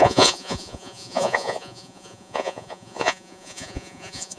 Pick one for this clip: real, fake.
fake